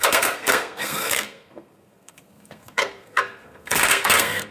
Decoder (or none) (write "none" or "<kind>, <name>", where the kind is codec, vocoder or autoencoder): codec, SNAC